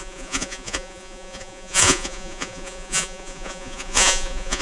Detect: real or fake fake